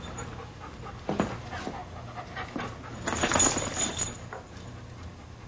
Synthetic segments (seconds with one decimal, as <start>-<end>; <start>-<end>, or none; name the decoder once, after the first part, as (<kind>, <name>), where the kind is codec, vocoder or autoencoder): none